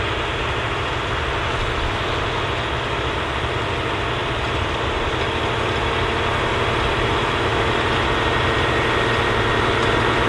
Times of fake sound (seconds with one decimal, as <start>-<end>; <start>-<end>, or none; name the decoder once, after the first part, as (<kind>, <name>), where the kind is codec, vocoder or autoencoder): 4.2-5.2 (vocoder, BigVGAN v2)